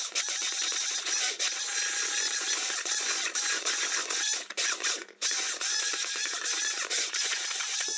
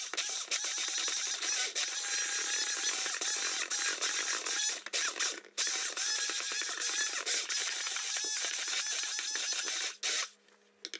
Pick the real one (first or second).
second